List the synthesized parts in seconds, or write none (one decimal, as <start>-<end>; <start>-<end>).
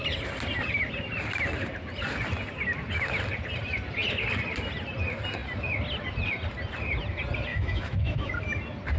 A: 7.5-8.3